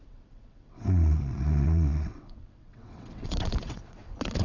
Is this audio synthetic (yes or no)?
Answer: yes